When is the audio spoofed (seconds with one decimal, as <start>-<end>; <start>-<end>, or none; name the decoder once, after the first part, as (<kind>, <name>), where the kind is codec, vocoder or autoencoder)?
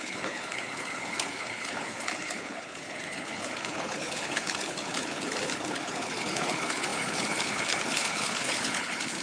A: 0.0-9.2 (codec, HILCodec)